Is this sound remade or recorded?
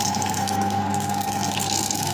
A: remade